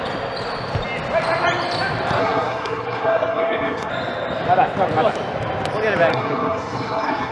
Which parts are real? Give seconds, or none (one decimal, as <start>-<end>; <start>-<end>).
0.0-2.2; 3.9-6.1